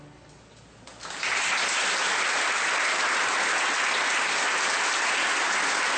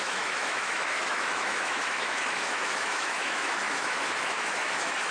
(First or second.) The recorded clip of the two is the first